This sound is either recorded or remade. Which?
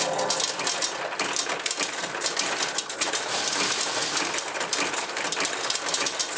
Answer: recorded